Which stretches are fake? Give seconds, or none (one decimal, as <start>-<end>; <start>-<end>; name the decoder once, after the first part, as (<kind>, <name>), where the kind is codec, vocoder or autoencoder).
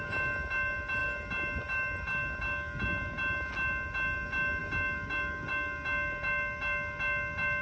none